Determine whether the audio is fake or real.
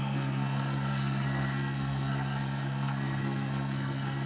fake